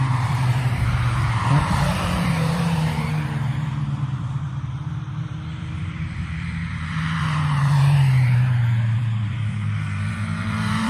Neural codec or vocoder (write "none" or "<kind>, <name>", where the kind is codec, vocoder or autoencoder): vocoder, BigVGAN v2